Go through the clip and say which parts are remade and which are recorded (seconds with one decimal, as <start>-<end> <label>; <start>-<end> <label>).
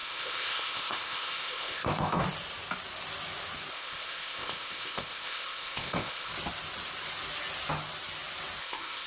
0.0-2.2 remade; 2.2-3.7 recorded; 3.7-6.3 remade; 6.3-8.6 recorded; 8.6-9.1 remade